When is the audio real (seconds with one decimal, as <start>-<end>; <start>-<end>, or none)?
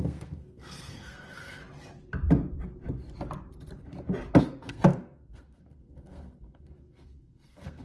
1.6-4.4